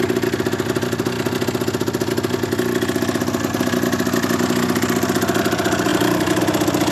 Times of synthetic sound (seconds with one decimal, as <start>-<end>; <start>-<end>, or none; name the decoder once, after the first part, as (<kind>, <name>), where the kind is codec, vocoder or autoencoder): 5.9-6.4 (vocoder, BigVGAN v2)